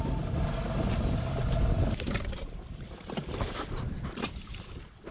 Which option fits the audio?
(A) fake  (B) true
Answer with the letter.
B